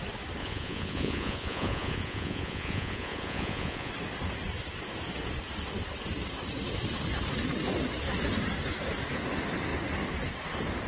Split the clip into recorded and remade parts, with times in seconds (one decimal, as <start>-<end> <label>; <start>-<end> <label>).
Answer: 0.0-0.4 recorded; 0.4-3.9 remade; 3.9-10.9 recorded